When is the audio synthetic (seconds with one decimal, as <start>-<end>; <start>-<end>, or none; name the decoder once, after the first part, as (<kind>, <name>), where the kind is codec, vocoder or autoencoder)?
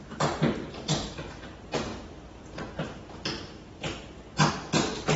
none